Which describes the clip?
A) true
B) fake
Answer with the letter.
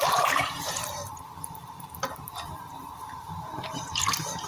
B